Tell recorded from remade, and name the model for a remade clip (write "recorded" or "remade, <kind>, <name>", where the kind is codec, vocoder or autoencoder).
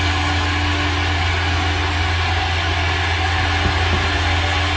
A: recorded